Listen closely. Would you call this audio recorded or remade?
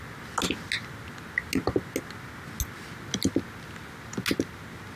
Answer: recorded